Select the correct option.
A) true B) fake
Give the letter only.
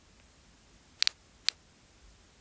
A